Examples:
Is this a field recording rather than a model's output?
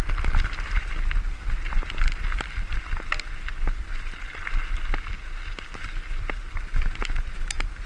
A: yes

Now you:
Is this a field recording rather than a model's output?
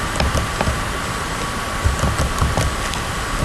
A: yes